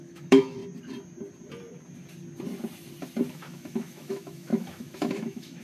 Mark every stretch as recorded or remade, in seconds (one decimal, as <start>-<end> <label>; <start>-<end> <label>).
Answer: 0.0-0.6 remade; 0.6-3.3 recorded; 3.3-5.6 remade